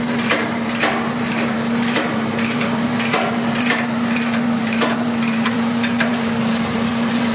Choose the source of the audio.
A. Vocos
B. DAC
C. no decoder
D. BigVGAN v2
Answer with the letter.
D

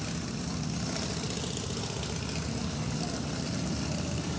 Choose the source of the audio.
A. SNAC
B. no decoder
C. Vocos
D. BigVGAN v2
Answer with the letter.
B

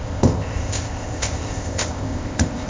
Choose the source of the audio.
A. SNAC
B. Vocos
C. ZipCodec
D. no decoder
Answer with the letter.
C